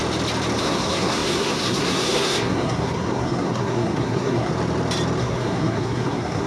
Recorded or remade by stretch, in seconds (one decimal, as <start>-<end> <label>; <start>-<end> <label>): 0.0-0.6 recorded; 0.6-4.5 remade; 4.5-5.2 recorded; 5.2-6.5 remade